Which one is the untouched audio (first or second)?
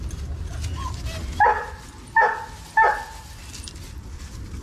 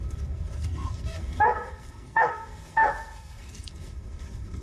first